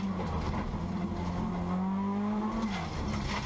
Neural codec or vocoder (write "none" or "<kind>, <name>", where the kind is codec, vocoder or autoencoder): none